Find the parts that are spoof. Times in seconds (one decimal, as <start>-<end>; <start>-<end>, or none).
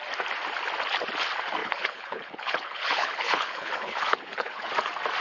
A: 1.6-4.7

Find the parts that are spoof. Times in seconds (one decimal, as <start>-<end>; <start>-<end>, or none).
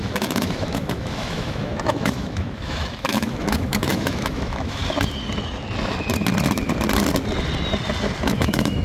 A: 0.0-4.8; 8.2-8.8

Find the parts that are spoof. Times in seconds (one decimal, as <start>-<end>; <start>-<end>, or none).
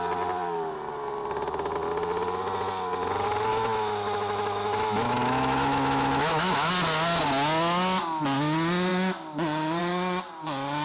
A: 3.5-6.7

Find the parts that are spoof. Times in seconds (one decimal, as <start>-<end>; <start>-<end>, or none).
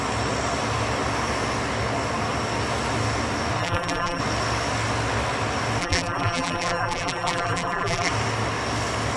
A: 3.6-4.2; 5.8-8.1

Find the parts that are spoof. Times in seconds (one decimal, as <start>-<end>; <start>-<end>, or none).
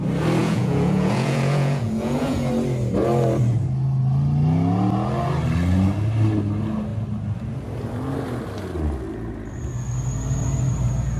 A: 0.4-2.5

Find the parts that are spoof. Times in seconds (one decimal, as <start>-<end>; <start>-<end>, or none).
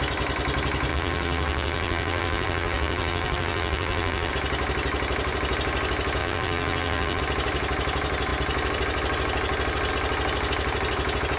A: 0.9-4.3; 6.2-7.2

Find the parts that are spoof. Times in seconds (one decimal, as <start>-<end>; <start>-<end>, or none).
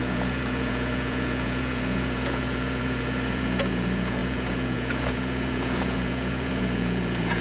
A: 0.0-7.4